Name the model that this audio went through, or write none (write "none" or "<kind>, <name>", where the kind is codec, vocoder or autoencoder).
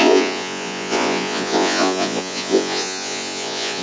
vocoder, Vocos